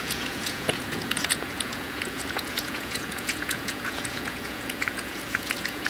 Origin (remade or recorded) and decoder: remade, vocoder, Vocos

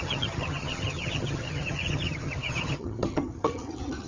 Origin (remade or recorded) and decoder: remade, vocoder, HiFi-GAN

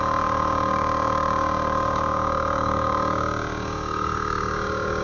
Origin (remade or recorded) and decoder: remade, codec, DAC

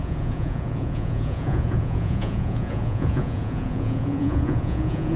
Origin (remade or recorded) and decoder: remade, vocoder, Vocos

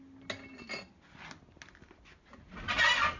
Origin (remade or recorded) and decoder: recorded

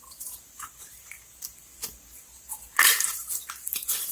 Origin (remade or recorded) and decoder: remade, vocoder, BigVGAN v2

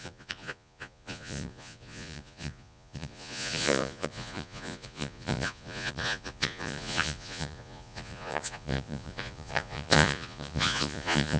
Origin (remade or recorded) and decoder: remade, vocoder, Vocos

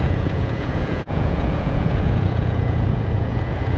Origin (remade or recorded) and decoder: remade, vocoder, Vocos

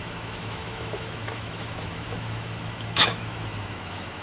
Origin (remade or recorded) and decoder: remade, autoencoder, DAC-VAE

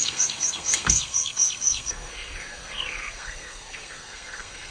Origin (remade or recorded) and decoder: remade, codec, SNAC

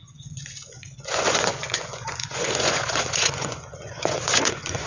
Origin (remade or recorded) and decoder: remade, vocoder, Vocos